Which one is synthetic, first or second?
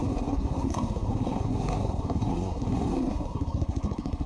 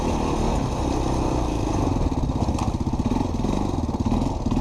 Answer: first